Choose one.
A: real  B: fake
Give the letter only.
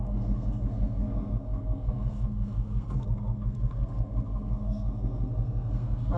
B